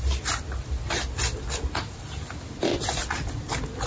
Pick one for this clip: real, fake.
real